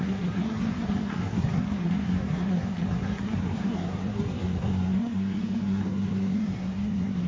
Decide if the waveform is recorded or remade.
remade